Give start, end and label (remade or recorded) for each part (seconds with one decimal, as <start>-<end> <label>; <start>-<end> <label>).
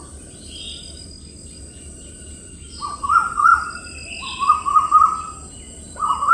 0.0-6.3 recorded